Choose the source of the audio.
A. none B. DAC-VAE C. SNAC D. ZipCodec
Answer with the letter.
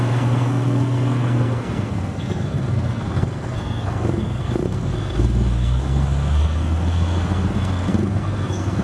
C